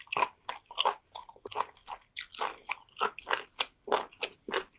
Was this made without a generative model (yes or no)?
yes